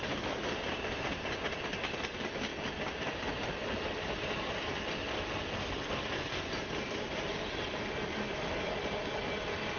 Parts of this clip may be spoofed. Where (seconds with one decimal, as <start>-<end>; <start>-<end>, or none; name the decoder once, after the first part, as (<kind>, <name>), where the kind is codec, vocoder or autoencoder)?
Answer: none